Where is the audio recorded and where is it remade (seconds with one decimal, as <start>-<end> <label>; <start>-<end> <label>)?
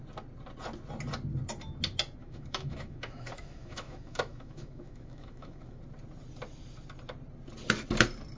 0.0-2.2 recorded; 2.2-5.8 remade; 5.8-8.4 recorded